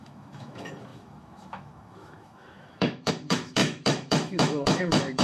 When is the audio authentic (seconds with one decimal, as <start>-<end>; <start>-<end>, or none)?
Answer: none